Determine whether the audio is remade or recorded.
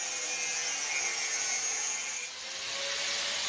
recorded